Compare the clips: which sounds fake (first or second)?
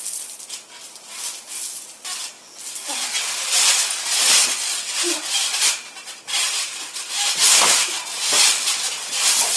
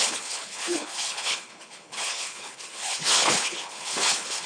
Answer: second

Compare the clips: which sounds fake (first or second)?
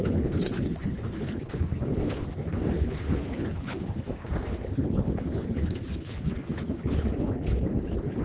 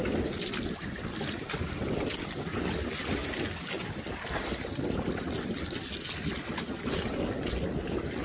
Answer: first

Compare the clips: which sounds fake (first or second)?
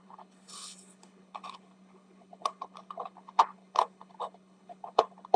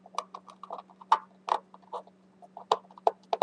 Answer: first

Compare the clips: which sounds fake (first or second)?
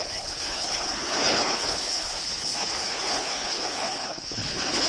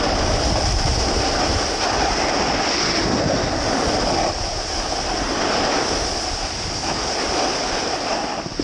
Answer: first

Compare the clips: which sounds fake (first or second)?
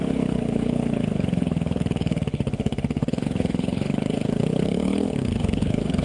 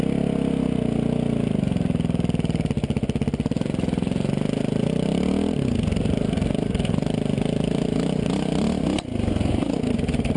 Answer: first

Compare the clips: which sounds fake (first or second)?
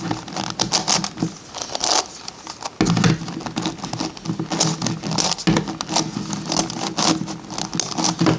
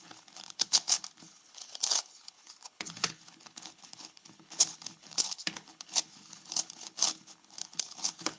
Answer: second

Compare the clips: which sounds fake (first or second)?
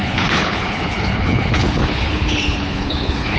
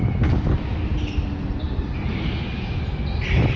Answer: first